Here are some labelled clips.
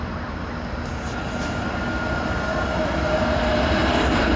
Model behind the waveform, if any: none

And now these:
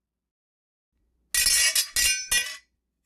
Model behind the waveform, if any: none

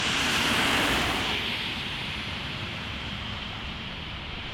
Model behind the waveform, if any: vocoder, BigVGAN v2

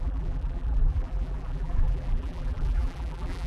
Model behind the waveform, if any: vocoder, BigVGAN v2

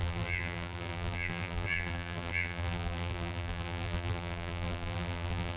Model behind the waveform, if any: vocoder, BigVGAN v2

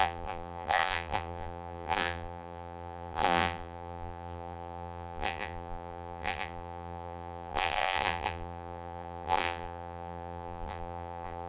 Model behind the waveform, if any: vocoder, BigVGAN v2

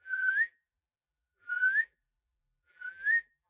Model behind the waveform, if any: vocoder, BigVGAN v2